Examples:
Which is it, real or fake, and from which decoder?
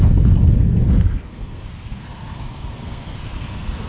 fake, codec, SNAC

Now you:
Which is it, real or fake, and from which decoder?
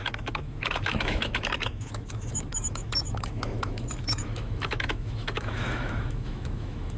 fake, autoencoder, DAC-VAE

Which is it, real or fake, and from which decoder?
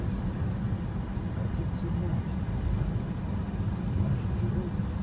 real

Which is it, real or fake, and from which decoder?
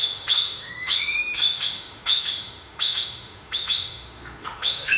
fake, autoencoder, DAC-VAE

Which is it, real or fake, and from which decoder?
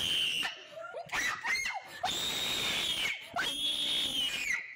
fake, vocoder, BigVGAN v2